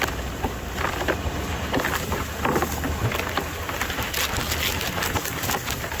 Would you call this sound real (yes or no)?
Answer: yes